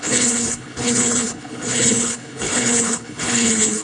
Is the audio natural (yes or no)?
no